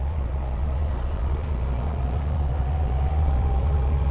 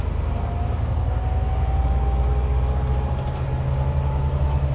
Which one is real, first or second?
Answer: second